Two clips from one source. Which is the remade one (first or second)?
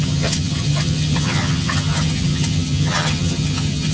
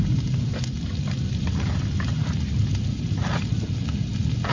first